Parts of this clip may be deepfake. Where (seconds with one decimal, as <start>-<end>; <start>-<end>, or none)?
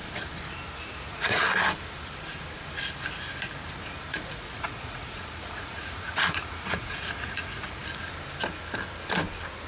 0.9-1.4; 4.1-7.8